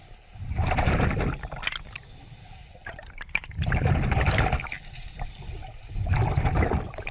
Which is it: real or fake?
real